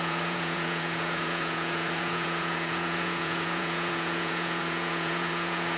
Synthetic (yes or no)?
yes